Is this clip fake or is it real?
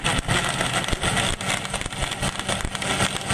real